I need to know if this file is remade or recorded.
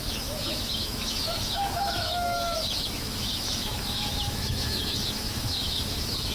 remade